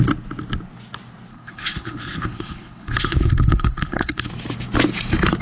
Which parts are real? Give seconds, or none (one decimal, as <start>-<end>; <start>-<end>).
0.0-1.3; 4.3-5.4